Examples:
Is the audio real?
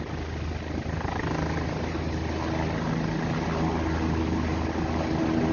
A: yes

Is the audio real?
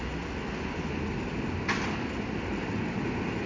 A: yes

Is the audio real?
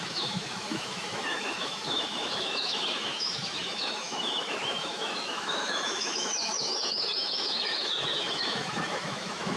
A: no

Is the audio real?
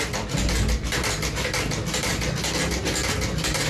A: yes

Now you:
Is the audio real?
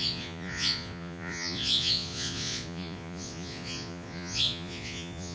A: no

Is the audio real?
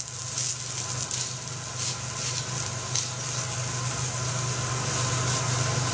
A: yes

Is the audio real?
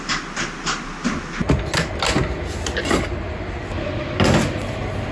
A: yes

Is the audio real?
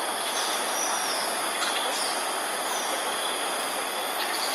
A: yes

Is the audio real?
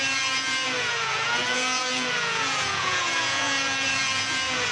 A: no